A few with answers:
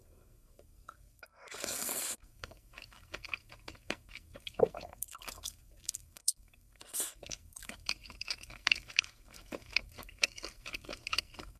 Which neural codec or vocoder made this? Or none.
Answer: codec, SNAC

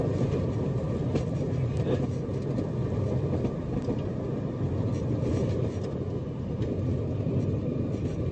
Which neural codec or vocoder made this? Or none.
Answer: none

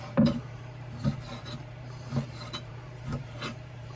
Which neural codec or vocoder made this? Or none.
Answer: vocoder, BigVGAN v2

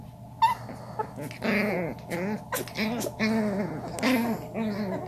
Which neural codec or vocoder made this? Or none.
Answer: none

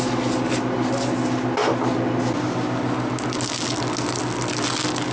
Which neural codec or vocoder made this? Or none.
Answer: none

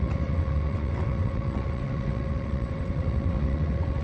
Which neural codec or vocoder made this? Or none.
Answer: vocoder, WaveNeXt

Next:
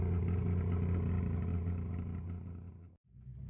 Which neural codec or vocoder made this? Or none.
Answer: none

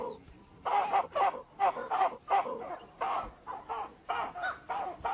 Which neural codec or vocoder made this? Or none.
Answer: none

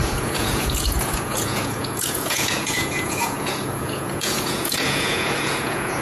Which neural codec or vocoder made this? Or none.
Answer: vocoder, Vocos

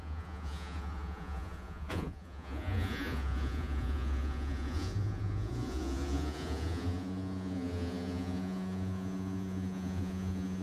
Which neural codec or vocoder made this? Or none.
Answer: vocoder, Vocos